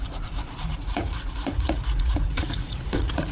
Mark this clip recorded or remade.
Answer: remade